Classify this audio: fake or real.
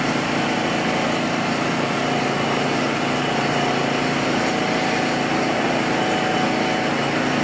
real